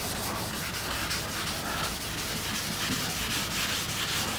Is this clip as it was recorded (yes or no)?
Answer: yes